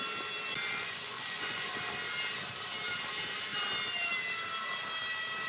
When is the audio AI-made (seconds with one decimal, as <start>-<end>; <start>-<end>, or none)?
0.7-1.7